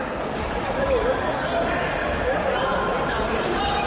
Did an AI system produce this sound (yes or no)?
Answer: no